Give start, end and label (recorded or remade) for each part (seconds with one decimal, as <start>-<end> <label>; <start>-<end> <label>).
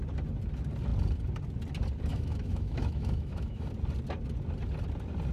0.0-2.1 recorded; 2.1-3.7 remade; 3.7-5.3 recorded